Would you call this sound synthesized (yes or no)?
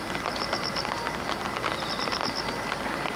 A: no